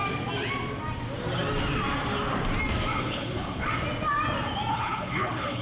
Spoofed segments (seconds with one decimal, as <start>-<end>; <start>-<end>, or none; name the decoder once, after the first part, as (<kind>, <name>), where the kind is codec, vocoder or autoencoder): 2.9-3.7 (codec, HILCodec); 4.7-5.6